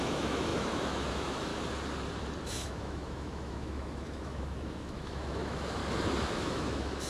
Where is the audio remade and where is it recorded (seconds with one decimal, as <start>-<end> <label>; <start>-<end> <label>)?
0.0-1.5 remade; 1.5-2.4 recorded; 2.4-5.8 remade; 5.8-6.3 recorded; 6.3-7.1 remade